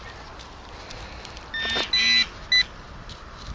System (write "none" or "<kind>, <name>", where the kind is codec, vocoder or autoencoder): none